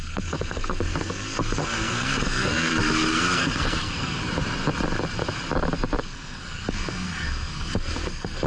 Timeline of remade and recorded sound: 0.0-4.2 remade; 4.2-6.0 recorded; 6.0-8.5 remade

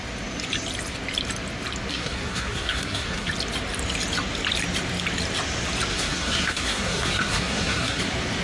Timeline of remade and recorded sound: 0.0-1.9 recorded; 1.9-3.3 remade; 3.3-5.9 recorded; 5.9-8.0 remade; 8.0-8.4 recorded

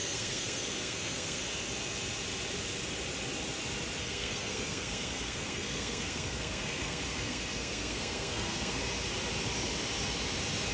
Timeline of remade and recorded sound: 0.0-1.4 remade; 1.4-4.0 recorded; 4.0-8.8 remade; 8.8-10.7 recorded

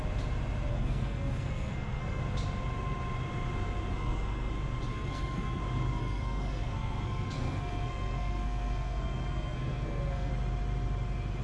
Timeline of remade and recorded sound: 0.0-0.7 recorded; 0.7-2.2 remade; 2.2-3.9 recorded; 3.9-4.5 remade; 4.5-4.9 recorded; 4.9-5.6 remade; 5.6-6.0 recorded; 6.0-10.3 remade; 10.3-11.4 recorded

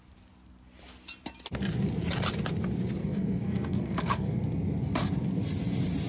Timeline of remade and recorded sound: 0.0-3.0 recorded; 3.0-4.4 remade; 4.4-6.1 recorded

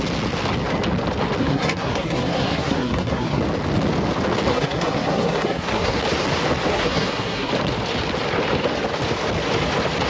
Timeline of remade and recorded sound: 0.0-1.4 recorded; 1.4-3.4 remade; 3.4-4.5 recorded; 4.5-6.0 remade; 6.0-6.7 recorded; 6.7-7.5 remade; 7.5-10.1 recorded